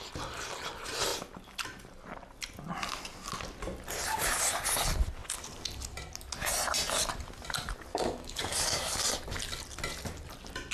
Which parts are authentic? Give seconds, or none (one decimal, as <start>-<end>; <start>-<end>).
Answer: 0.0-7.9; 9.0-10.7